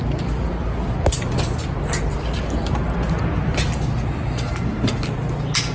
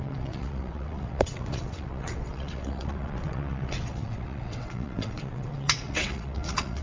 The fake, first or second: second